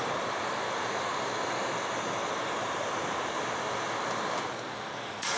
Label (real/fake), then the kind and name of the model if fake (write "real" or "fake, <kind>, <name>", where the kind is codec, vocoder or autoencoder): real